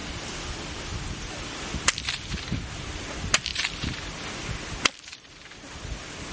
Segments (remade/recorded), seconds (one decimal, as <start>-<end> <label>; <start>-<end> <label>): 0.0-6.3 recorded